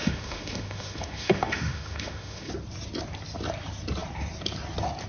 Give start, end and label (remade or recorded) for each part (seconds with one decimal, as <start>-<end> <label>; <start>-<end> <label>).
0.0-2.5 remade; 2.5-5.1 recorded